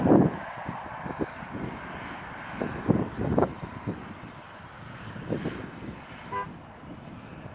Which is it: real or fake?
real